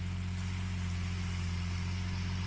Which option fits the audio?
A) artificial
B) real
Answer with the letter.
B